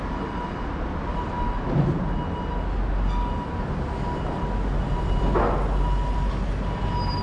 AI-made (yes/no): no